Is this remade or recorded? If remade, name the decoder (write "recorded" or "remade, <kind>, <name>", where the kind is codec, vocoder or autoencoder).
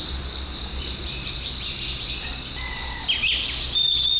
recorded